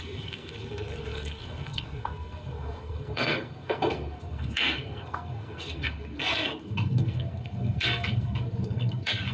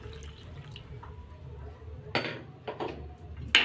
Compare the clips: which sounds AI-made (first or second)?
first